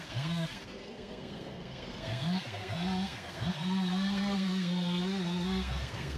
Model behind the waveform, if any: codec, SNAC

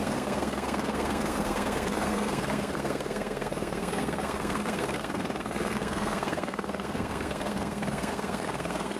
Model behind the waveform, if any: codec, SNAC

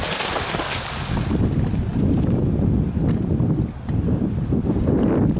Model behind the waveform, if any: none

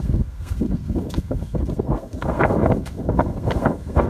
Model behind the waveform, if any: codec, SNAC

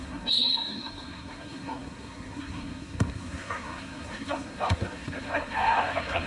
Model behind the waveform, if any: codec, SNAC